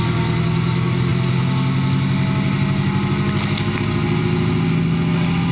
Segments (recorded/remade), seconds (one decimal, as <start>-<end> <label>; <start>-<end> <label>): 0.0-5.5 recorded